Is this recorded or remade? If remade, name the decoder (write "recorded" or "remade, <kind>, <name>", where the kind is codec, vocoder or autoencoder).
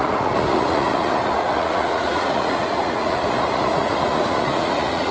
remade, vocoder, Vocos